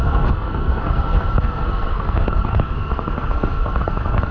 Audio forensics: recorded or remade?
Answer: remade